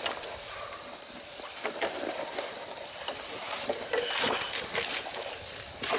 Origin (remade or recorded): remade